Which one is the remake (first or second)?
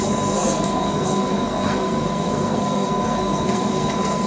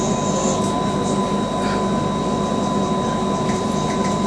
first